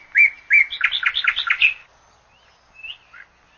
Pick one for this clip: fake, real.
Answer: real